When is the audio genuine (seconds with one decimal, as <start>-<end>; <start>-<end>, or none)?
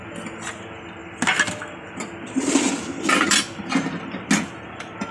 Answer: 0.0-5.1